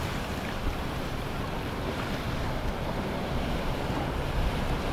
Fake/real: fake